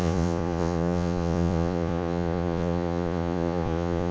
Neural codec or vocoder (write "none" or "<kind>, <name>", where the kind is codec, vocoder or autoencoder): vocoder, Vocos